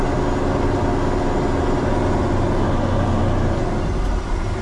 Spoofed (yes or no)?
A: no